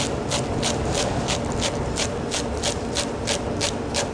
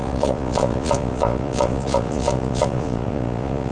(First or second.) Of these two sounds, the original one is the first